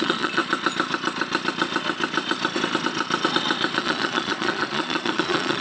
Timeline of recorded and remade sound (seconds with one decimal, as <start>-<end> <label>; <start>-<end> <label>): 0.0-0.4 remade; 0.4-3.8 recorded; 3.8-5.6 remade